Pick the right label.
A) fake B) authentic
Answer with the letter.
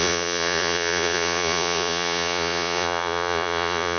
A